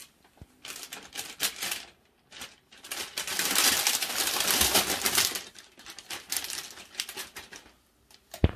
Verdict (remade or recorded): recorded